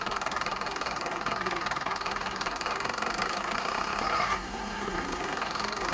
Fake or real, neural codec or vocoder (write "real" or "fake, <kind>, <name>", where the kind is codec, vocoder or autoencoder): fake, codec, SNAC